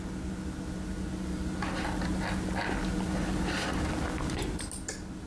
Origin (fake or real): real